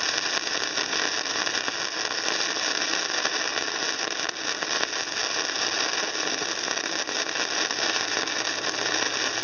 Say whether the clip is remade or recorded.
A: recorded